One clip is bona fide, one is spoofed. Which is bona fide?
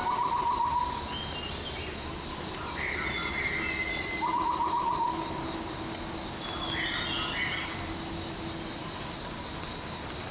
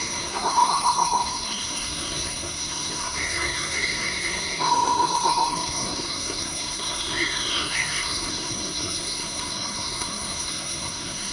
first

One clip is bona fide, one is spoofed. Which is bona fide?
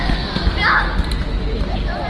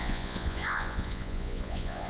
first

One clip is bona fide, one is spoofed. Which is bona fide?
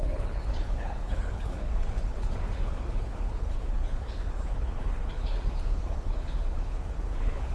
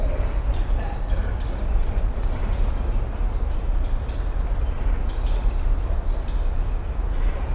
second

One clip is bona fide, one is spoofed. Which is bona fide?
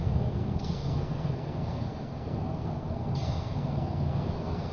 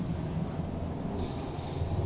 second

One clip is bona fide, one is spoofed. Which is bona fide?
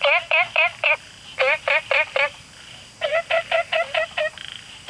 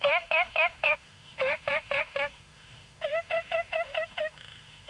first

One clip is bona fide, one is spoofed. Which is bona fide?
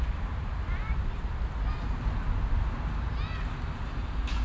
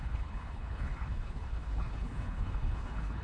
first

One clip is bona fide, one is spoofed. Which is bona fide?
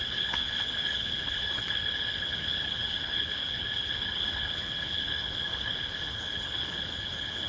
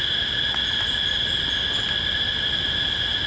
second